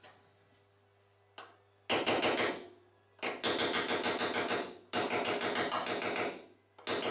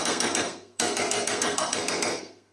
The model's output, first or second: second